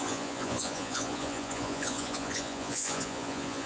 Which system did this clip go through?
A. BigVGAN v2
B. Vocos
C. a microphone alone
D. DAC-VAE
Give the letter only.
B